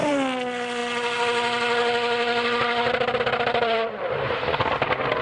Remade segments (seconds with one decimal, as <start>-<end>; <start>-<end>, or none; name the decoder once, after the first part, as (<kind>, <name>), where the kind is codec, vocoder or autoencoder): none